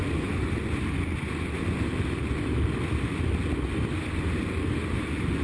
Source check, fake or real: real